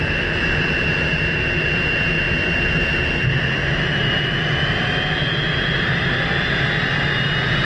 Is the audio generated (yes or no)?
no